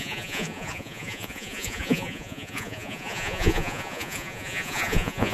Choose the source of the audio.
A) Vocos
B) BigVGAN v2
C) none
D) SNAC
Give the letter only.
A